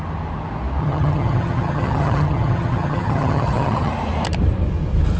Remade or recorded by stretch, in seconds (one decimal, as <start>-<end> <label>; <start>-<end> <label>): 0.0-0.8 recorded; 0.8-3.9 remade; 3.9-5.2 recorded